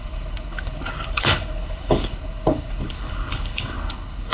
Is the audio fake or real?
fake